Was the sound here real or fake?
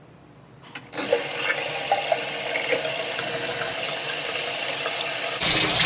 real